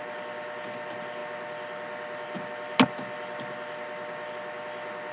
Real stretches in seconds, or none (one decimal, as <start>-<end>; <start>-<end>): 0.0-5.1

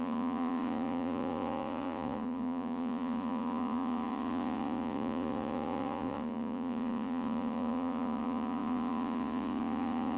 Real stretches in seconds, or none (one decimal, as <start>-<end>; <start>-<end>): none

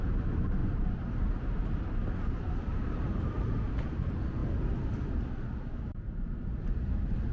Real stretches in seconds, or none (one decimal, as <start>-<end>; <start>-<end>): 4.4-6.0

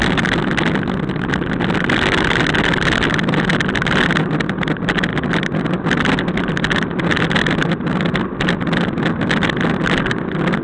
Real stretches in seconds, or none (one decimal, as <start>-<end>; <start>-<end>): 0.0-10.6

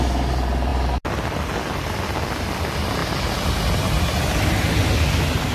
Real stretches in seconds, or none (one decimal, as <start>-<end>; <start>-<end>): 0.0-5.5

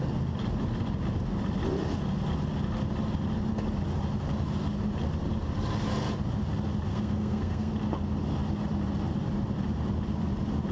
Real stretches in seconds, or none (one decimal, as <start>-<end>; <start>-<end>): 0.0-6.9; 7.7-10.7

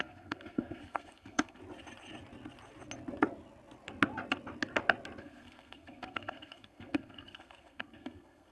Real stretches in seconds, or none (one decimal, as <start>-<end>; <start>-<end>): 1.6-5.2

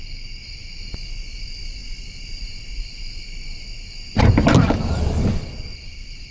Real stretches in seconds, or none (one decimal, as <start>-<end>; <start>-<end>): 0.0-6.3